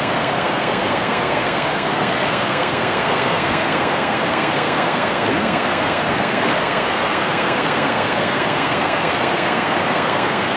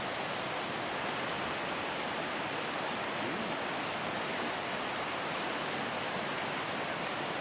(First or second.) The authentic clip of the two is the second